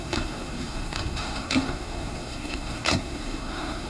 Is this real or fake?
fake